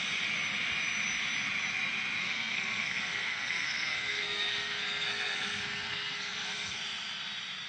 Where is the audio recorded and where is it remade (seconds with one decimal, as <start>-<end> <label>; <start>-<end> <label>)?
0.0-2.2 recorded; 2.2-6.8 remade; 6.8-7.7 recorded

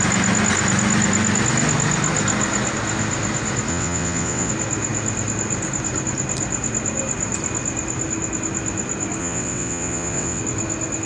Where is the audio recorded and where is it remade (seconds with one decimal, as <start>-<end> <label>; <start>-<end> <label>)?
0.0-3.7 recorded; 3.7-4.5 remade; 4.5-9.2 recorded; 9.2-10.4 remade; 10.4-11.1 recorded